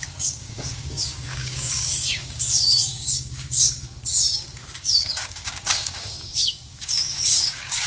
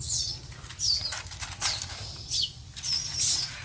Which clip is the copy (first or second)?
first